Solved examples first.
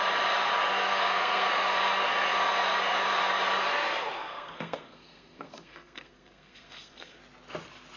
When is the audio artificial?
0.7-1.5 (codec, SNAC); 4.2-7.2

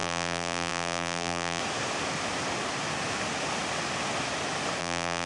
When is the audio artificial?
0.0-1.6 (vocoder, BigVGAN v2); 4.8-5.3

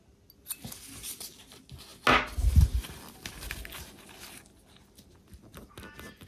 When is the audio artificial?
none

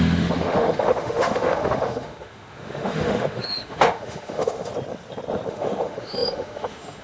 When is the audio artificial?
0.0-4.7 (autoencoder, DAC-VAE); 5.5-7.0

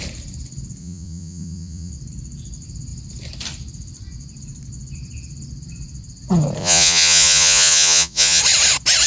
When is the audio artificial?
0.8-1.9 (vocoder, Vocos); 6.6-8.4

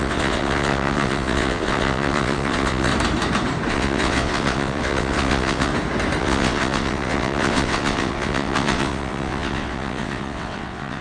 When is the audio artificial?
0.0-2.9 (vocoder, WaveNeXt); 3.7-5.7; 6.2-11.0

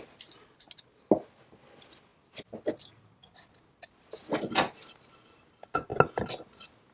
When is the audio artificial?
none

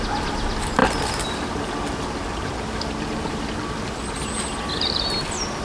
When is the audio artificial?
none